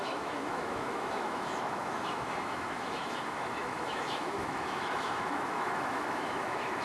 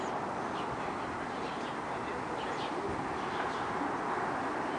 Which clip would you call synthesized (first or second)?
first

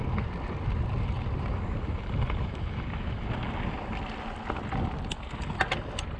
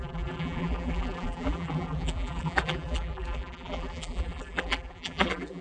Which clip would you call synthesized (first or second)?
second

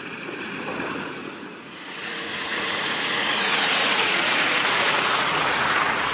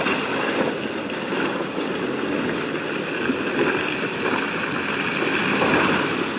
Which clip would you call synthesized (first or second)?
first